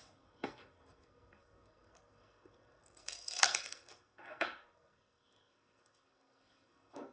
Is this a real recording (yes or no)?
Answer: no